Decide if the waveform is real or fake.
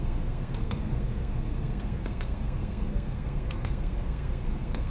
fake